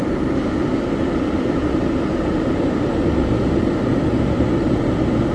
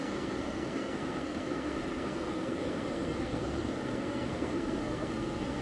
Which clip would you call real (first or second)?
first